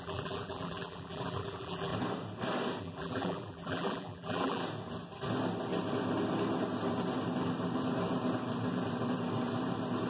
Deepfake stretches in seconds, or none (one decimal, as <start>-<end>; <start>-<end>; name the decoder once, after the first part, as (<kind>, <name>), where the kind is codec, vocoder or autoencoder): 0.0-1.9 (vocoder, BigVGAN v2); 2.8-4.6